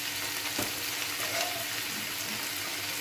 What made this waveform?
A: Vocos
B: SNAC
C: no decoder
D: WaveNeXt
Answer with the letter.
C